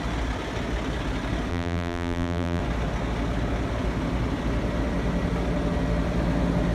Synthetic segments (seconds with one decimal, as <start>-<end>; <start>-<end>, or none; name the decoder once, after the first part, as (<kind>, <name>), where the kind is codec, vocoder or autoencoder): 1.5-2.6 (vocoder, BigVGAN v2)